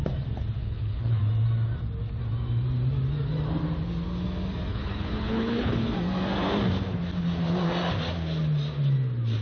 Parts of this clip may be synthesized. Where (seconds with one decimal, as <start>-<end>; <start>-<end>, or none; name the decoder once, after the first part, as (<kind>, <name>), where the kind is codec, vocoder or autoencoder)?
0.6-1.2 (codec, HILCodec); 4.7-5.8